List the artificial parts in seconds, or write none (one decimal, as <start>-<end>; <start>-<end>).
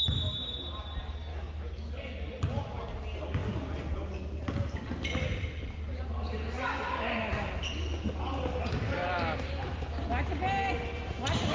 1.3-1.9